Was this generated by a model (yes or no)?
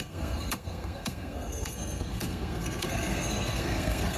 yes